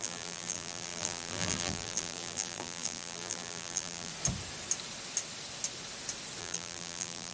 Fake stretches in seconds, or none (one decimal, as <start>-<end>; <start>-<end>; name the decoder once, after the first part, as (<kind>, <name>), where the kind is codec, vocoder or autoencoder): 0.0-4.1 (vocoder, BigVGAN v2); 6.4-7.3